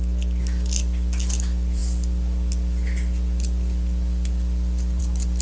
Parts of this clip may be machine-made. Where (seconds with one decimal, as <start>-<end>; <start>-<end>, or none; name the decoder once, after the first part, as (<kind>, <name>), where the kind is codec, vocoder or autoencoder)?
none